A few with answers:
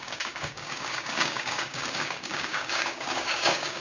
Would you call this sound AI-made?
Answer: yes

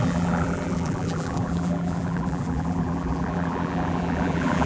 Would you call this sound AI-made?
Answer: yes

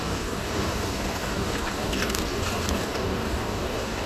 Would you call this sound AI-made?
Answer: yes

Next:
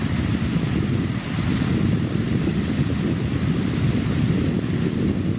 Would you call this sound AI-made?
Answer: no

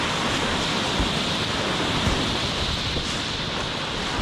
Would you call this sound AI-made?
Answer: no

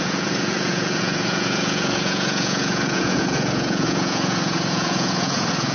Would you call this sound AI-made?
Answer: yes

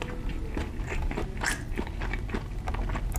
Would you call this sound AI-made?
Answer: no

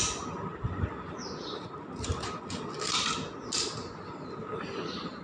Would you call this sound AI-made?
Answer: no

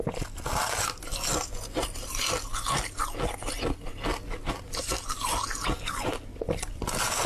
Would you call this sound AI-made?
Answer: no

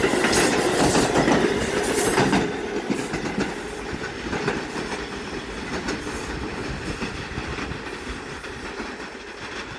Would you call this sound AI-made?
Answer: no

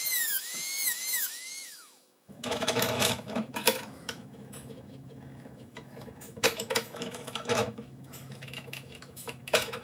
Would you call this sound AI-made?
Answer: yes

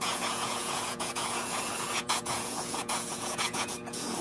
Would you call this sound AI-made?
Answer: yes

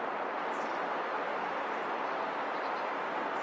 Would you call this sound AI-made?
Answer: no